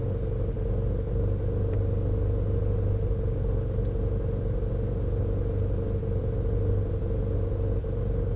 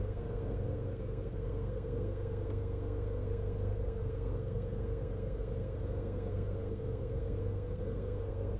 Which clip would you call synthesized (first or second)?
second